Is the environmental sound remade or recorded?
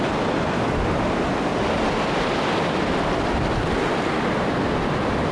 recorded